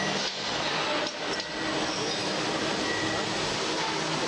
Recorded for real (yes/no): yes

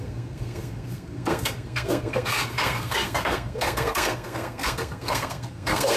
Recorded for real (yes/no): no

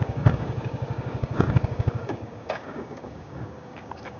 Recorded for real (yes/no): no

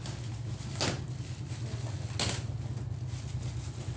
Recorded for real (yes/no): yes